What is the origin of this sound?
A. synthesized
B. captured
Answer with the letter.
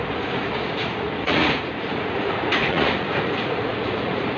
A